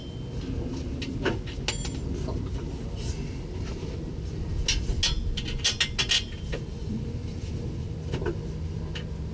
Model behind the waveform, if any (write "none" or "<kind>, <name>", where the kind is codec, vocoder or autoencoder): none